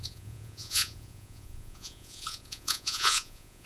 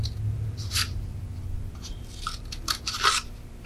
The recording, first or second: second